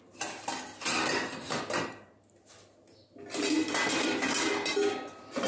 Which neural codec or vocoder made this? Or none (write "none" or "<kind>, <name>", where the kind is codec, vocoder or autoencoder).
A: none